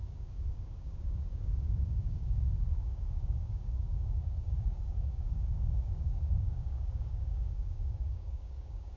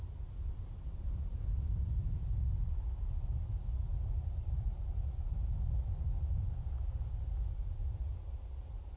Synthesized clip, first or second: first